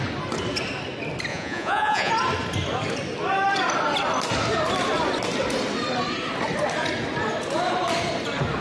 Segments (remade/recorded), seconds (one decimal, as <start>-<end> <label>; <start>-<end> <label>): 0.0-1.3 recorded; 1.3-2.1 remade; 2.1-8.6 recorded